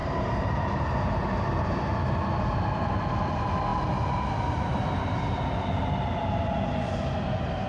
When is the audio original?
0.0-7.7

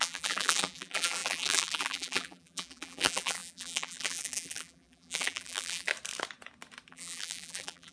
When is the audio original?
5.9-6.9

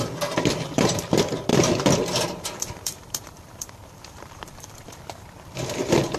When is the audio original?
0.0-1.5; 5.0-6.2

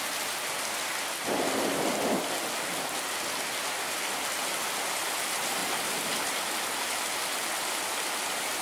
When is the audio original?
0.0-5.6; 6.2-8.6

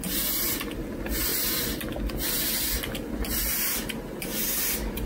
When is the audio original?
0.0-5.1